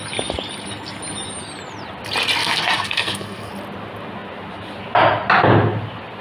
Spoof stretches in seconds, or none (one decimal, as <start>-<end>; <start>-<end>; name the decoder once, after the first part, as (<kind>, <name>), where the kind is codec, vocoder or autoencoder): 2.4-3.5 (codec, SNAC)